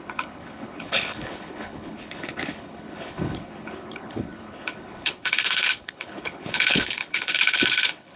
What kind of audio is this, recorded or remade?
remade